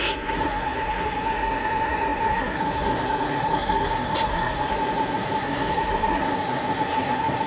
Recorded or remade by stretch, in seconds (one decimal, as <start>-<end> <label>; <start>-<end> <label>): 0.0-7.5 remade